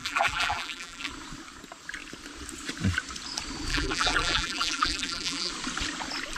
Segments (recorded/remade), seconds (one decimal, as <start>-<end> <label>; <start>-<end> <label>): 0.0-1.1 remade; 1.1-3.7 recorded; 3.7-5.5 remade; 5.5-6.4 recorded